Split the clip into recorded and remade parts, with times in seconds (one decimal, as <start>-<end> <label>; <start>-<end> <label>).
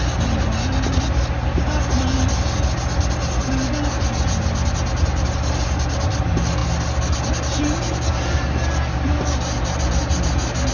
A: 0.0-10.7 recorded